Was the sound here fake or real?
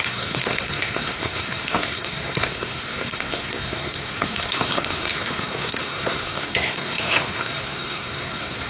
fake